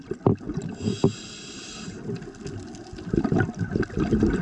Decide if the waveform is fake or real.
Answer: real